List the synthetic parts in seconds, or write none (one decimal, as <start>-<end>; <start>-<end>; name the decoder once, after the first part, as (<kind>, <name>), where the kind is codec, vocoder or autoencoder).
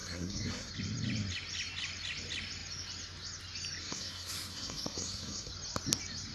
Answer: 0.0-0.7 (codec, SNAC); 3.8-5.5